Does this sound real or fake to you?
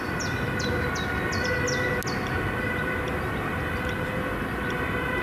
real